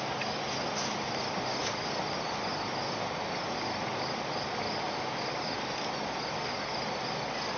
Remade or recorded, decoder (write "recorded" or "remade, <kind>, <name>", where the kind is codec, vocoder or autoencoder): recorded